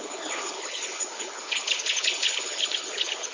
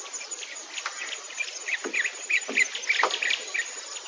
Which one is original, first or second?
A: second